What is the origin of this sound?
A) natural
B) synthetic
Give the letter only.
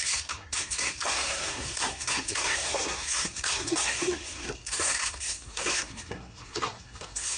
B